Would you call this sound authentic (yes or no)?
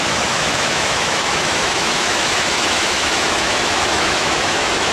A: no